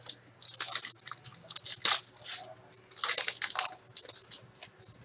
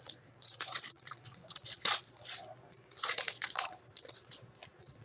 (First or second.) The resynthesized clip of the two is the second